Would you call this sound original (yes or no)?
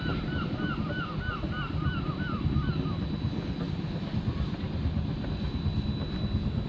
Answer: yes